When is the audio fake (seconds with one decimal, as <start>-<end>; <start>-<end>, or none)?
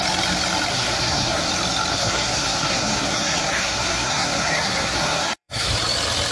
0.7-1.5; 1.9-5.7